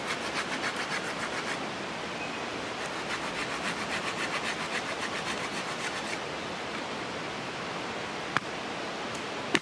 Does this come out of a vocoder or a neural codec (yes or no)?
no